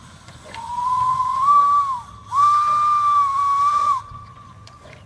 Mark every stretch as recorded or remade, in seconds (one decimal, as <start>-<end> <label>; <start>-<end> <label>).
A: 0.0-1.6 remade; 1.6-3.7 recorded; 3.7-5.1 remade